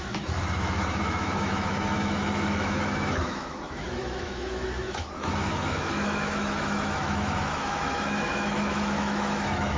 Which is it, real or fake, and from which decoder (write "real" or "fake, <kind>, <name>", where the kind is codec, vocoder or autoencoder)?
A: fake, autoencoder, DAC-VAE